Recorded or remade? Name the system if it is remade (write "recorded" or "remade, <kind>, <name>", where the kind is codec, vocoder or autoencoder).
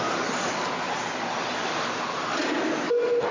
recorded